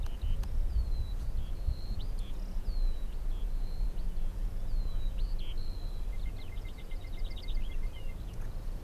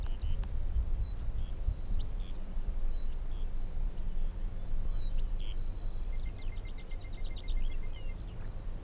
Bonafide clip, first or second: second